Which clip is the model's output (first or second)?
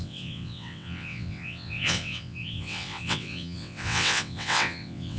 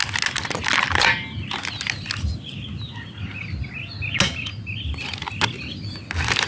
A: first